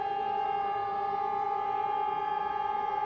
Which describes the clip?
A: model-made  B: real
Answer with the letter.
A